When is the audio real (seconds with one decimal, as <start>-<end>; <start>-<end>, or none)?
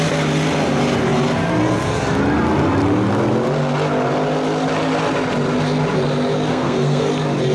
0.0-6.5; 7.1-7.5